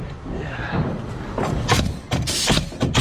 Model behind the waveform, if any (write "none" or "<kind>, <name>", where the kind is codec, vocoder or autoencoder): none